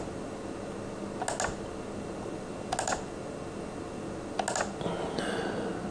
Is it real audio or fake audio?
real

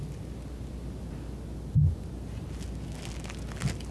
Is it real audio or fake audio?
real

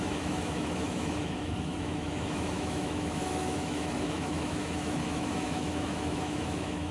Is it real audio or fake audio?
fake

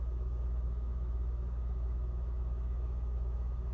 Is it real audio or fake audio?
fake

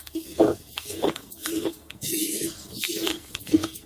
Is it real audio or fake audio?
fake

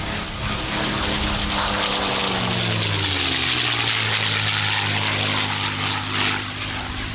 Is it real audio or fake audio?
real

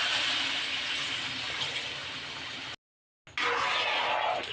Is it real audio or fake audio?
real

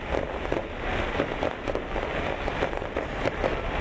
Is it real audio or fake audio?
real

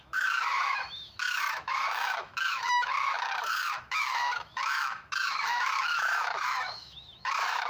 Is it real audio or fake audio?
fake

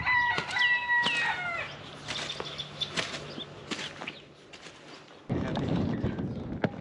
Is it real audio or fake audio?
real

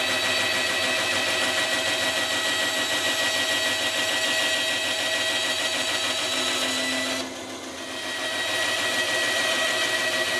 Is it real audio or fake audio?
real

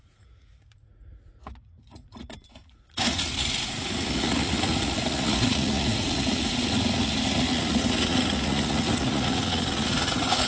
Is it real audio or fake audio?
fake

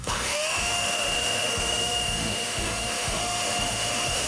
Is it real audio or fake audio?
fake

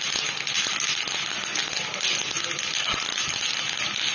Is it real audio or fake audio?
real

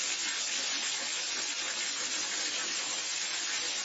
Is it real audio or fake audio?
real